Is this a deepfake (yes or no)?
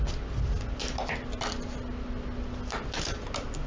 no